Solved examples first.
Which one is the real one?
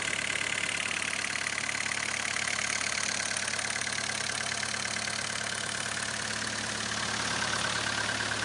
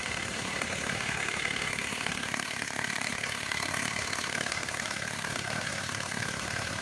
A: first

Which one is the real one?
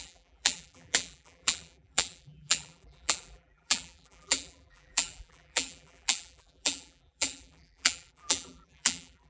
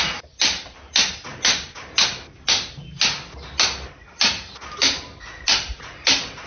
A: second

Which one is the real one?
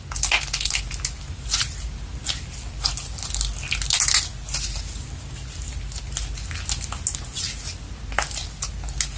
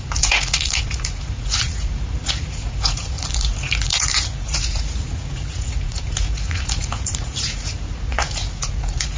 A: first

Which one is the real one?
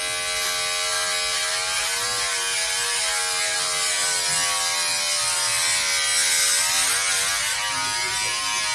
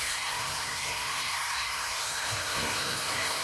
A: first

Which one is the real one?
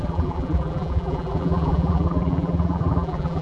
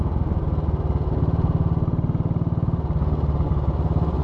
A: second